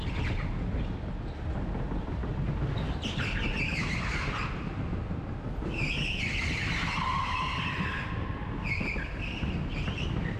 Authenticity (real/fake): real